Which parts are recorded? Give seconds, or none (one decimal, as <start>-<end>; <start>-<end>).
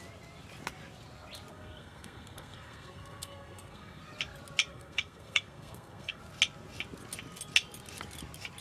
0.0-1.5; 4.0-4.7; 6.2-8.6